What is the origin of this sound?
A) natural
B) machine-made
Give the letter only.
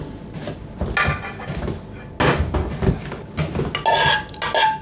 A